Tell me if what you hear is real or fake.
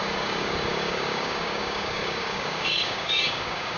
fake